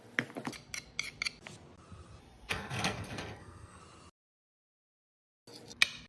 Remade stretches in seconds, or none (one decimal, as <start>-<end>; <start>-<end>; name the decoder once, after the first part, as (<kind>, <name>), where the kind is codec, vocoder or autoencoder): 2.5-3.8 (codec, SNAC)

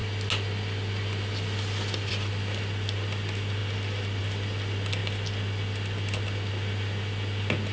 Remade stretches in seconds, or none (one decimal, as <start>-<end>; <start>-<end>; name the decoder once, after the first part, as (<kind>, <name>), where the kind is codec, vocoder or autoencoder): none

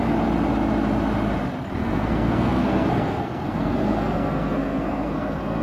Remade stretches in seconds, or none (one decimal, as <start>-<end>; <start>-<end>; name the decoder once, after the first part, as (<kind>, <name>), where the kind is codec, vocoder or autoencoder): 1.8-5.6 (codec, SNAC)